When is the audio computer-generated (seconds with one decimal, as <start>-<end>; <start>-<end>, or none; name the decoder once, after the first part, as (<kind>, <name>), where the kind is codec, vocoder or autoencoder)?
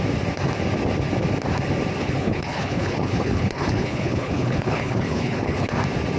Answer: 2.0-5.7 (codec, HILCodec)